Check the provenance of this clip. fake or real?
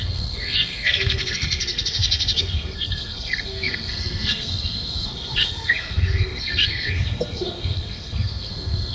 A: fake